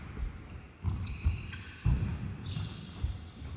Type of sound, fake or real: real